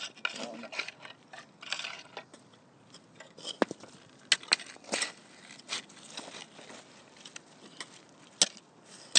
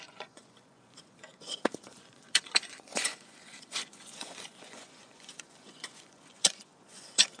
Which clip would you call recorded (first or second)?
first